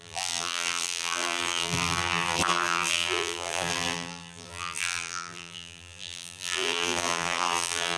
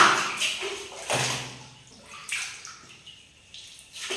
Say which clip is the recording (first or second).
second